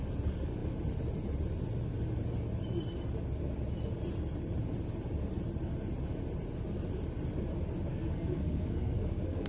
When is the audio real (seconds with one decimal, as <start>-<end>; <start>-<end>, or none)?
0.0-7.9